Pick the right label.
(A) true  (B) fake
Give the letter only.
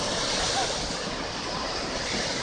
A